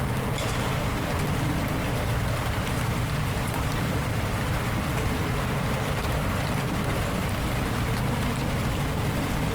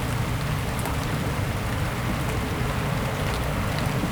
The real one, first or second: second